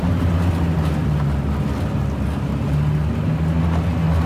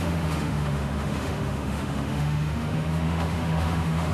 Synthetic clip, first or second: second